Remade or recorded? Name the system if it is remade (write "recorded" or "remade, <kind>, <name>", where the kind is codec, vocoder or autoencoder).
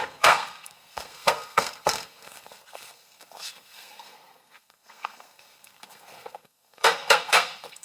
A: remade, codec, SNAC